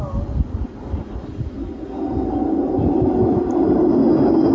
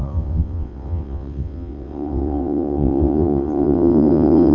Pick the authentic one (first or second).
first